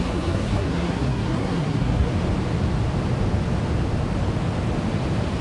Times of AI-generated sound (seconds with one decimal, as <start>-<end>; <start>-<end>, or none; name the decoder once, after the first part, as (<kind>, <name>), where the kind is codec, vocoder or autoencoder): 0.0-2.1 (codec, SNAC)